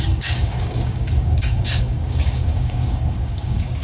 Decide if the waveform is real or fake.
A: fake